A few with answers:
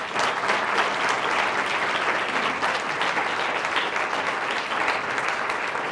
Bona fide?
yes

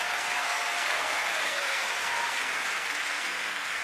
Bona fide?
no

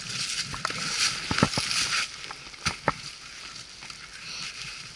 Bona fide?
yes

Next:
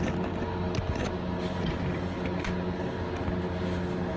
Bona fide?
yes